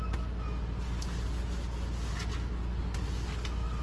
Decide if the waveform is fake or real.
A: real